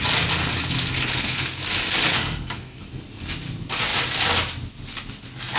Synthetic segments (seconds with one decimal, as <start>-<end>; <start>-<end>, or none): 1.1-1.6; 2.1-2.8